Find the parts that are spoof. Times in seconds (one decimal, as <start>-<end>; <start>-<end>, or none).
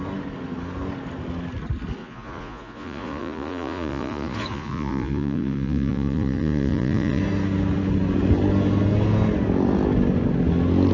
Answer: 2.0-7.2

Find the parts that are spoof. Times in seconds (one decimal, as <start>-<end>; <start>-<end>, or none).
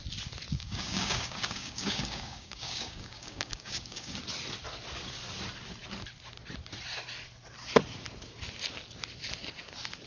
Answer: 0.5-4.2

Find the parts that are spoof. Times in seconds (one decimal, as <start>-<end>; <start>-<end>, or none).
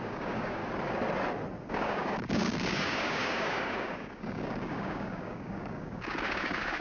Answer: 0.0-0.6; 1.7-6.8